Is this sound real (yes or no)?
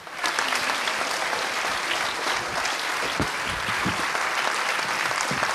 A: yes